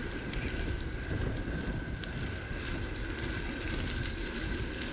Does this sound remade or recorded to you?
recorded